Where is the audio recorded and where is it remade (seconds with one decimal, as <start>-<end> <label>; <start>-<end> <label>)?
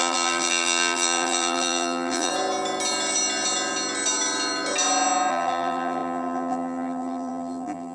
0.0-2.3 remade; 2.3-5.3 recorded; 5.3-7.9 remade